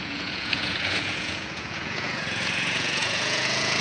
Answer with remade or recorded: remade